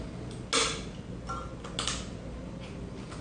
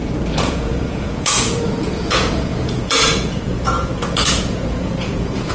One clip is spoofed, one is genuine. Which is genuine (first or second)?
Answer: first